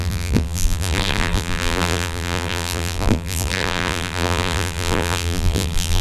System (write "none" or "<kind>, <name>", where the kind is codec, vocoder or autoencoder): vocoder, BigVGAN v2